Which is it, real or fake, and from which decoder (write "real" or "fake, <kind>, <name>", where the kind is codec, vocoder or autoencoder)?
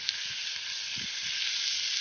real